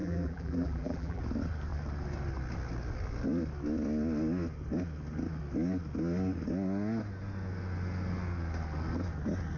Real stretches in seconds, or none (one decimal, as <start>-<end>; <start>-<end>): 1.2-9.6